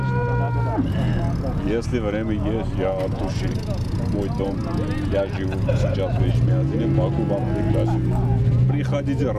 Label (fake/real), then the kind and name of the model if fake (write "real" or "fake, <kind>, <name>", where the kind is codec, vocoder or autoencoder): real